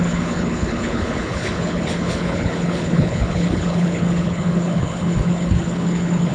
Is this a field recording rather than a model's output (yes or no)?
no